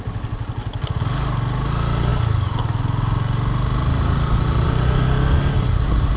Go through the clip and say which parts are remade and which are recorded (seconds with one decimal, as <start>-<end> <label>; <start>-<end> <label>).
0.0-6.2 recorded